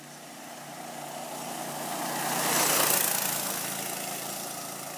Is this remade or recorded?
recorded